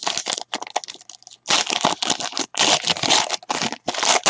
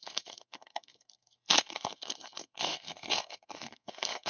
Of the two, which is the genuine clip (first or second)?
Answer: first